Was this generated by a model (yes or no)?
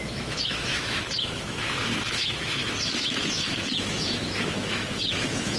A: yes